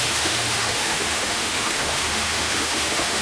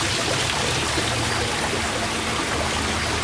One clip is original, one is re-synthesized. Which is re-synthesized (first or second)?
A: first